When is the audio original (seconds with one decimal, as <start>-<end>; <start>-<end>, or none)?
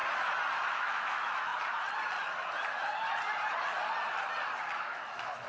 0.0-0.7; 1.5-4.8